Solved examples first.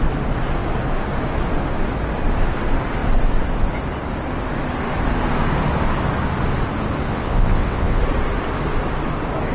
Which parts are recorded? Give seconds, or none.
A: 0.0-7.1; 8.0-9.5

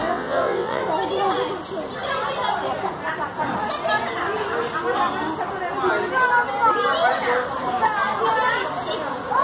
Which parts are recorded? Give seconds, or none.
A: 0.8-9.4

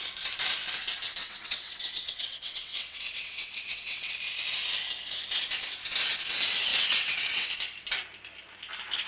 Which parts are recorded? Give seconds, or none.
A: 0.0-1.2; 4.1-6.7; 7.5-9.1

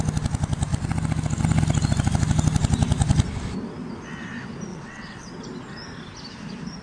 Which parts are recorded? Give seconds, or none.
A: 0.0-4.7; 5.3-6.8

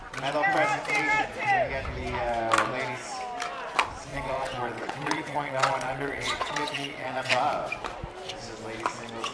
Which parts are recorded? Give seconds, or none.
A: 0.0-4.1; 7.4-9.3